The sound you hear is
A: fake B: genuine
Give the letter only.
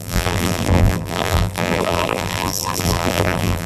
A